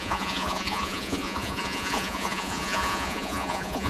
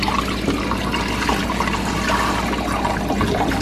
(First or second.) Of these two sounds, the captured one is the second